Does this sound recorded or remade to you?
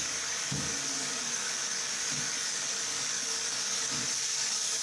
remade